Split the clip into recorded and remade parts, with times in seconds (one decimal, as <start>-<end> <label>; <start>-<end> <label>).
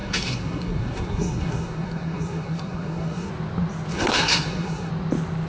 0.0-3.3 remade; 3.3-3.9 recorded; 3.9-4.9 remade; 4.9-5.5 recorded